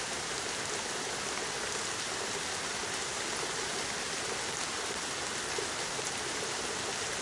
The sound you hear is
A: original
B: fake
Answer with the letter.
A